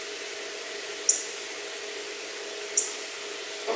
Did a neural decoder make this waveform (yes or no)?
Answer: no